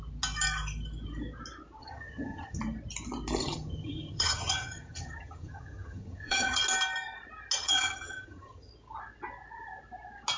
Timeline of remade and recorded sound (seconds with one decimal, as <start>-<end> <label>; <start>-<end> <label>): 0.0-1.8 recorded; 1.8-2.6 remade; 2.6-3.4 recorded; 3.4-6.6 remade; 6.6-7.6 recorded; 7.6-8.7 remade; 8.7-10.4 recorded